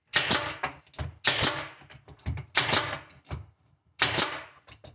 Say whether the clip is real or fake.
real